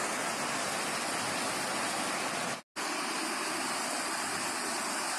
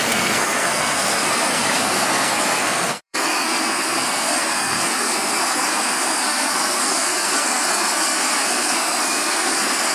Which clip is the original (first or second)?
first